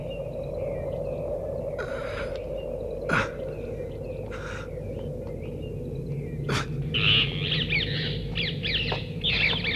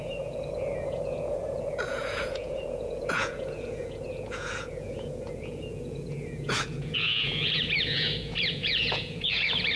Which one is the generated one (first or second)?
second